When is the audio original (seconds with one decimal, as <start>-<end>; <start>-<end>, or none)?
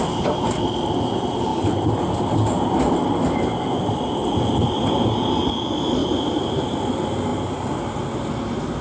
0.0-4.2; 5.0-6.0; 6.8-8.8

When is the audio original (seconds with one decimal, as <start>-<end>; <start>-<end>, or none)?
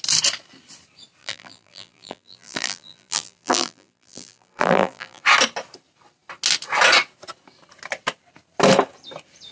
0.0-1.2; 5.2-9.5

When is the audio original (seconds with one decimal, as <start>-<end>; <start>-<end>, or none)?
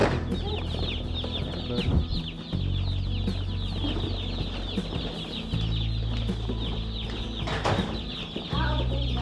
0.0-9.2